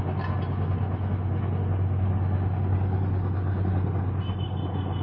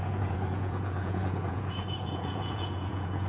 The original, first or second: first